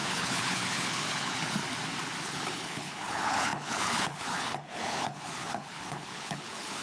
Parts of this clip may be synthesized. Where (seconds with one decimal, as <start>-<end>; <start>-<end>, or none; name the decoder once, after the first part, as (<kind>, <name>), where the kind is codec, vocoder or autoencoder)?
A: 0.0-1.6 (codec, HILCodec); 2.2-6.8